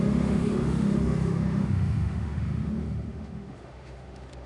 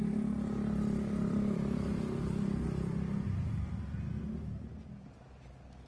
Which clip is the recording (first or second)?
second